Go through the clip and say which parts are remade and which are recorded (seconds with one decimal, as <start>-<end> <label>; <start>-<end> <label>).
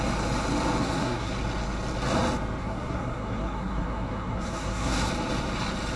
0.0-0.8 recorded; 0.8-1.3 remade; 1.3-2.6 recorded; 2.6-5.1 remade; 5.1-6.0 recorded